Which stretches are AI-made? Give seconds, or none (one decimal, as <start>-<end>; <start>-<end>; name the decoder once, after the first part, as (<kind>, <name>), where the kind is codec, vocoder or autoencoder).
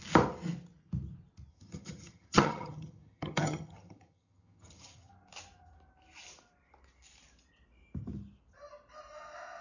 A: 1.5-5.1 (vocoder, HiFi-GAN)